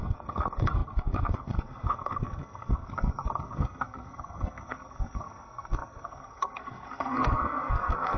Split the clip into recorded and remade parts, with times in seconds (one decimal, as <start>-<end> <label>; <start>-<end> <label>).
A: 0.0-8.2 remade